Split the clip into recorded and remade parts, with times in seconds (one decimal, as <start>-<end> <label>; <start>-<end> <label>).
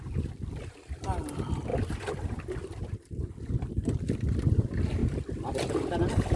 0.0-6.4 recorded